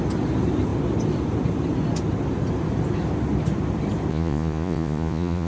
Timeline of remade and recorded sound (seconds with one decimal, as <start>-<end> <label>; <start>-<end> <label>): 0.0-4.1 recorded; 4.1-5.5 remade

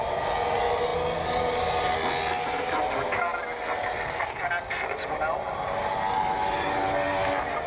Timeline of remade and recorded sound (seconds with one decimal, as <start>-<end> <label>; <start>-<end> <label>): 0.0-7.7 recorded

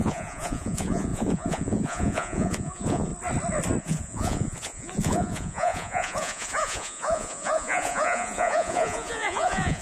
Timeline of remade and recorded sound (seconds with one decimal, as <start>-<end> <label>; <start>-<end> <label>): 0.0-3.1 remade; 3.1-3.8 recorded; 3.8-9.8 remade

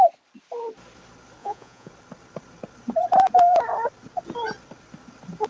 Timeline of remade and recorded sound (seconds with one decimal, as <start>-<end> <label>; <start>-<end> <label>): 0.0-1.4 recorded; 1.4-1.9 remade; 1.9-5.5 recorded

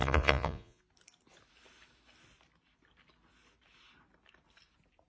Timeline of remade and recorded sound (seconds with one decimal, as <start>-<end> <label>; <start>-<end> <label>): 0.0-0.8 remade; 0.8-5.1 recorded